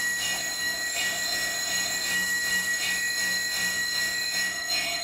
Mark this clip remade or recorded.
remade